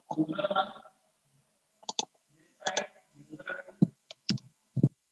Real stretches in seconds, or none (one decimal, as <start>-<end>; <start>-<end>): 0.0-1.7